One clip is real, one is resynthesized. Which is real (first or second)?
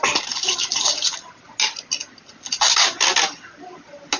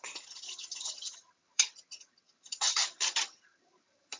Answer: first